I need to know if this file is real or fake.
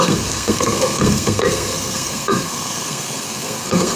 fake